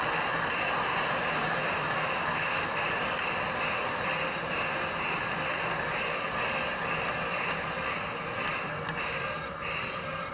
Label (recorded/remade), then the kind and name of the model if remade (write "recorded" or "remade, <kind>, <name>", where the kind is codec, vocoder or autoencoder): recorded